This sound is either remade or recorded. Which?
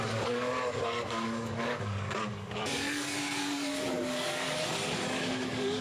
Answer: remade